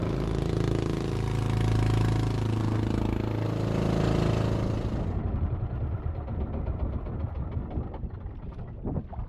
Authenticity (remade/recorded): recorded